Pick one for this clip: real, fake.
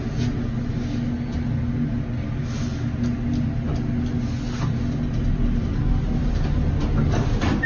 real